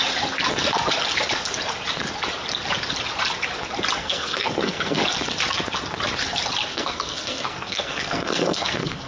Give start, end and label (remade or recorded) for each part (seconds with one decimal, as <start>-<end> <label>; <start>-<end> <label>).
0.0-4.0 recorded; 4.0-5.0 remade; 5.0-6.7 recorded; 6.7-9.1 remade